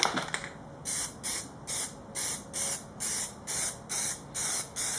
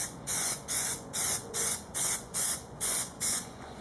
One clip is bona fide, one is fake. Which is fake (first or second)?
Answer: second